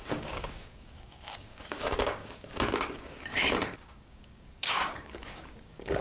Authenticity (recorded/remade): remade